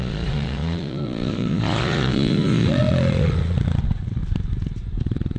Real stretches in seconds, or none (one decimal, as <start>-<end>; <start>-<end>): 4.2-5.0